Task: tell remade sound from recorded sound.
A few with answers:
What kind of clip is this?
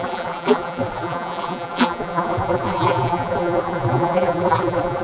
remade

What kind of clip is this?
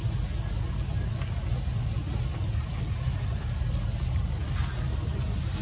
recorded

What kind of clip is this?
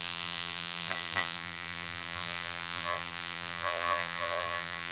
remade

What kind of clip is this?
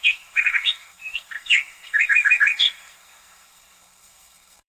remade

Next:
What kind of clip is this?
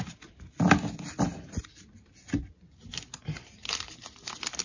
recorded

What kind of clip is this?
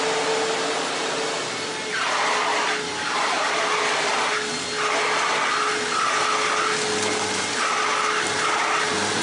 recorded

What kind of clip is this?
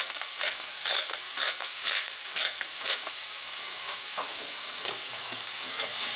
remade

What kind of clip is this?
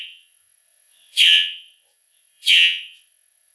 remade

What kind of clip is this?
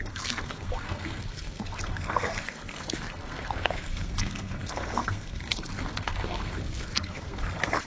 remade